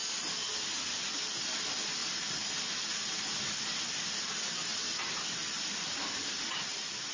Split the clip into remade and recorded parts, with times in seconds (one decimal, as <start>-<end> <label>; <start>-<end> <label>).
0.0-7.1 recorded

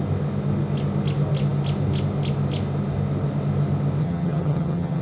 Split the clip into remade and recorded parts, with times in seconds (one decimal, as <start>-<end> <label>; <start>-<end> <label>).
0.0-4.0 recorded; 4.0-5.0 remade

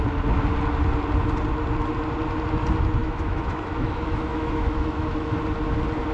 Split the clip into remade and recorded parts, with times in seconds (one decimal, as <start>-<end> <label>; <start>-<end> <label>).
0.0-3.0 recorded; 3.0-5.4 remade; 5.4-6.1 recorded

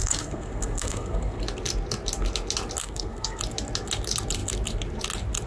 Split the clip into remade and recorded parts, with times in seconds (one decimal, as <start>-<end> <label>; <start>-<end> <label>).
0.0-1.4 remade; 1.4-2.8 recorded; 2.8-3.4 remade; 3.4-5.5 recorded

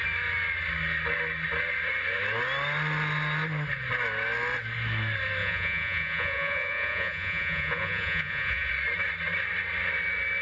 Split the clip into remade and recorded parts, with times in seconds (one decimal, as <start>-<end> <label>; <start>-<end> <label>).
0.0-5.4 recorded; 5.4-8.7 remade; 8.7-10.4 recorded

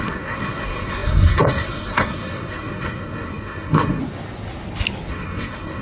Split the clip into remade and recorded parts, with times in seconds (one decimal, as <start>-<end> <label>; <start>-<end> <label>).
0.0-4.0 remade; 4.0-5.1 recorded; 5.1-5.8 remade

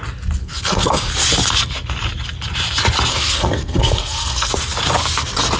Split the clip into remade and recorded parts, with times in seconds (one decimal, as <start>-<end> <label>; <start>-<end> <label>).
0.0-0.4 recorded; 0.4-1.1 remade; 1.1-3.1 recorded; 3.1-4.5 remade; 4.5-5.6 recorded